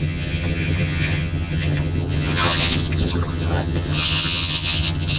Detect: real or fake fake